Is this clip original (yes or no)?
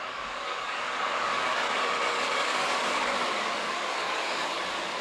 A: no